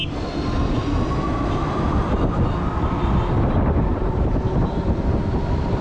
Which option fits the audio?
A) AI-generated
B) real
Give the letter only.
B